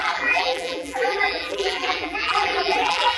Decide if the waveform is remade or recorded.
remade